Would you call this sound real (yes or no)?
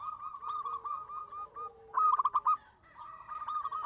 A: yes